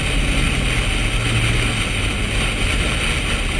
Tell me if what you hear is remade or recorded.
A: recorded